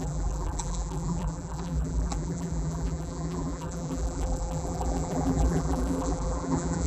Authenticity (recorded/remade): remade